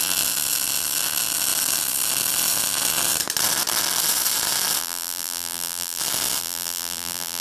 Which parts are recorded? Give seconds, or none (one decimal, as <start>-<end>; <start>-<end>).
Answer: 0.0-4.8; 6.0-6.4